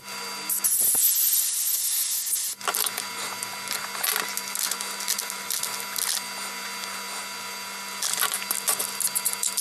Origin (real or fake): real